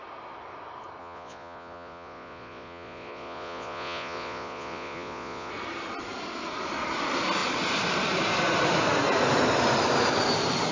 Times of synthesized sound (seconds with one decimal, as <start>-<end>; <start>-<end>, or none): 1.0-5.5